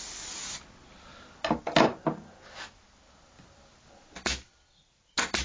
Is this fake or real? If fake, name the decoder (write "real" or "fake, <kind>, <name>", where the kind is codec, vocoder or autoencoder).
real